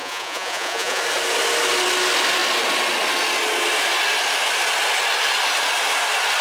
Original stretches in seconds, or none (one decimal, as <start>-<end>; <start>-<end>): 1.0-6.4